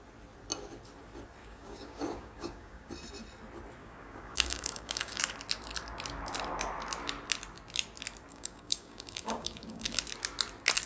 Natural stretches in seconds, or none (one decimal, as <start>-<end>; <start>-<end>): 0.0-1.4; 2.9-3.8; 5.2-8.3; 9.9-10.9